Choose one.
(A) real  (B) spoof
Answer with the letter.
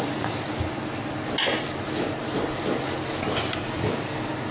A